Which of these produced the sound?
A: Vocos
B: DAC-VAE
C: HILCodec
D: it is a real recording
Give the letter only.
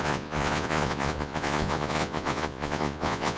A